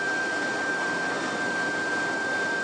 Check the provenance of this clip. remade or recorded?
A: recorded